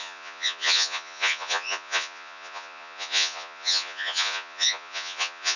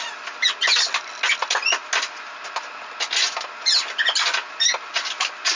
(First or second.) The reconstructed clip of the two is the first